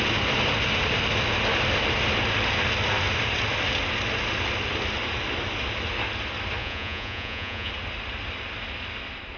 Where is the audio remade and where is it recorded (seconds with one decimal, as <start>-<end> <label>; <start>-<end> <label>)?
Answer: 0.0-6.6 recorded; 6.6-7.7 remade; 7.7-9.4 recorded